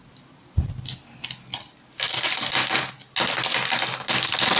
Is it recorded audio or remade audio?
recorded